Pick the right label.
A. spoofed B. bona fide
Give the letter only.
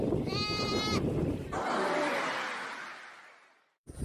B